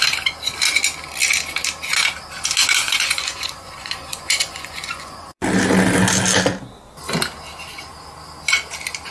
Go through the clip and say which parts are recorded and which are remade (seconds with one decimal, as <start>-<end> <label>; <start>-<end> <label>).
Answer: 0.0-2.8 recorded; 2.8-5.4 remade; 5.4-9.1 recorded